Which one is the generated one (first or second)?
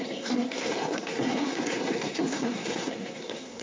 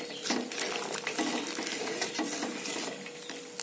first